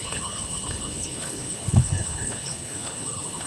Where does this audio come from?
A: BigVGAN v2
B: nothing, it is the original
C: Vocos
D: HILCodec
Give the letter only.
D